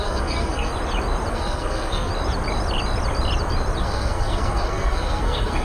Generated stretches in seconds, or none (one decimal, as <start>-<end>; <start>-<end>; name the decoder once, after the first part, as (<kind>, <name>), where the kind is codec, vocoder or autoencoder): 0.0-0.7 (codec, SNAC); 1.3-2.1; 3.8-5.6